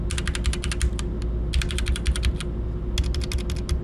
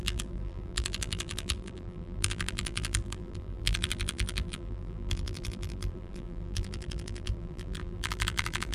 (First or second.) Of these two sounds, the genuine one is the first